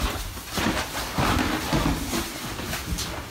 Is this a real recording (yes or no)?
yes